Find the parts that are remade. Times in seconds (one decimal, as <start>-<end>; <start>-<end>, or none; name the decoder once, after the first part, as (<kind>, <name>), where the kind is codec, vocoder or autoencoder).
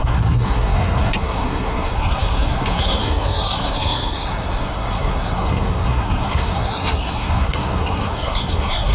0.0-8.9 (codec, SNAC)